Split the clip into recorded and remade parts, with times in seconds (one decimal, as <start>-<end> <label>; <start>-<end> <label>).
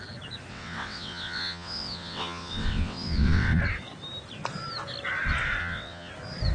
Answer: 0.0-0.5 recorded; 0.5-3.6 remade; 3.6-5.6 recorded; 5.6-6.1 remade; 6.1-6.5 recorded